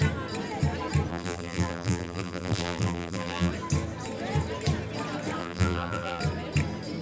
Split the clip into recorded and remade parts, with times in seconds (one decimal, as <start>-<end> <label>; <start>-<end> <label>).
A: 0.0-1.1 recorded; 1.1-3.5 remade; 3.5-5.4 recorded; 5.4-6.2 remade; 6.2-7.0 recorded